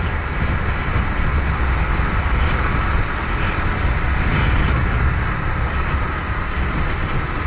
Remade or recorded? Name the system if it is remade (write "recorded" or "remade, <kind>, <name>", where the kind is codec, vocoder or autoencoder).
recorded